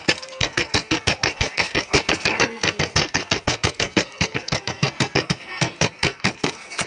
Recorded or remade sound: remade